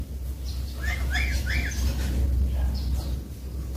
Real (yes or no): yes